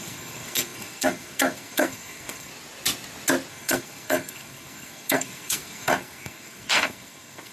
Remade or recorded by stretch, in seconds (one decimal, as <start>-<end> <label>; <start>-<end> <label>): 0.0-2.5 remade; 2.5-3.5 recorded; 3.5-7.5 remade